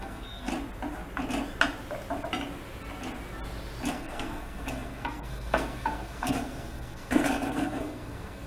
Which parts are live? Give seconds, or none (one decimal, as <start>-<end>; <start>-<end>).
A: 0.5-3.9